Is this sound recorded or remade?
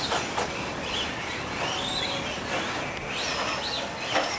recorded